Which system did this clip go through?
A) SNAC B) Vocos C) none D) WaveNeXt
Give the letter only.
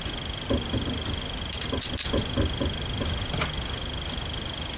C